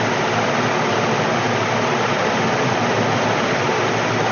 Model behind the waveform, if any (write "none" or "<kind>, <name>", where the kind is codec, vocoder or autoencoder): none